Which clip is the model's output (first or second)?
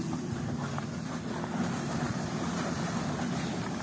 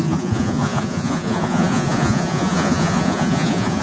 second